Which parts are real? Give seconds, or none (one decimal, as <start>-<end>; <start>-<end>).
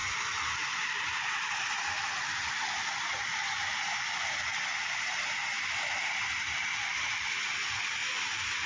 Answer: 4.5-6.8; 8.0-8.7